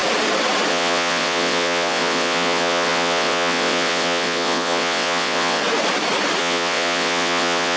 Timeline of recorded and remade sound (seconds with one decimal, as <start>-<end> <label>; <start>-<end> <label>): 0.0-0.7 recorded; 0.7-5.6 remade; 5.6-6.4 recorded; 6.4-7.8 remade